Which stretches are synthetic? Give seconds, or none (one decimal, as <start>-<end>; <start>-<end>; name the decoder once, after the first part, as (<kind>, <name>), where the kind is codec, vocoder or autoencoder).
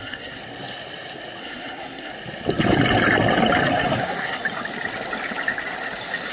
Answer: 0.0-0.4 (codec, SNAC); 1.4-2.1; 4.0-4.4